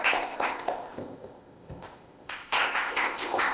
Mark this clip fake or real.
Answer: fake